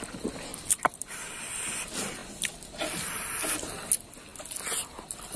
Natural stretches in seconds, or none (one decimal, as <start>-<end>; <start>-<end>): 0.0-0.5; 1.4-5.4